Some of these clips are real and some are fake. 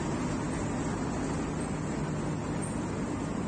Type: real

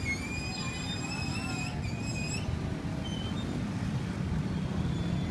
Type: real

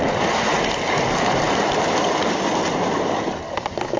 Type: real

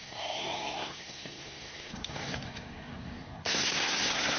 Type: fake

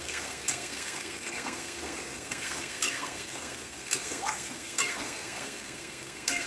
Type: fake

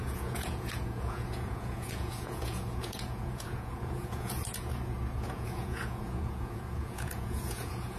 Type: fake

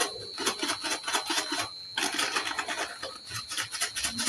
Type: real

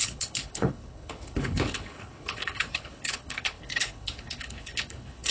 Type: fake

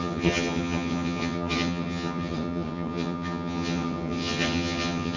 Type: fake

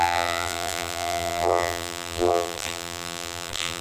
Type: fake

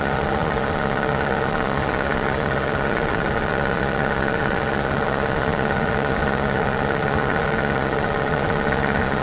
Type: fake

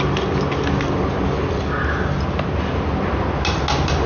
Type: real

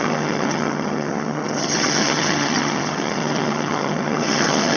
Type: fake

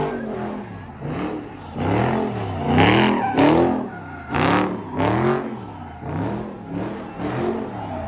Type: real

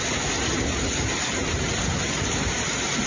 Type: real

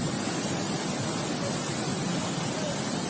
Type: real